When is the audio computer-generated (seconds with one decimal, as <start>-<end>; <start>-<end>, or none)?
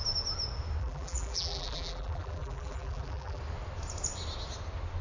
0.8-3.4